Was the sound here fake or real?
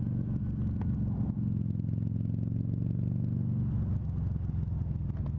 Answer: real